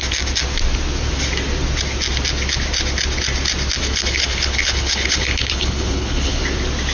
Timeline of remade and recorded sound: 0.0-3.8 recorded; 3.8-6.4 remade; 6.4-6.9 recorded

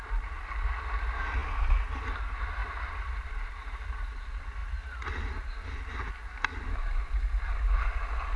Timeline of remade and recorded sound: 0.0-8.4 recorded